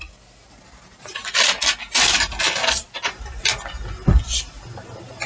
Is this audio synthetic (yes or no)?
no